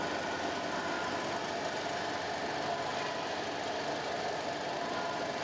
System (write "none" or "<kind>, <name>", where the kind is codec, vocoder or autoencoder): none